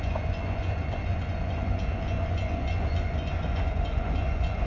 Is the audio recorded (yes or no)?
no